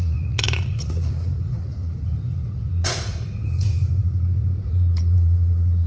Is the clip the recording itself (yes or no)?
no